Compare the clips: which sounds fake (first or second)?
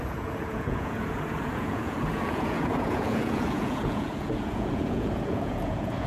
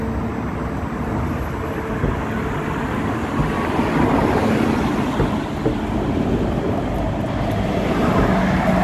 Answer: first